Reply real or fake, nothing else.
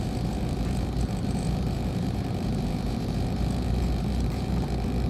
fake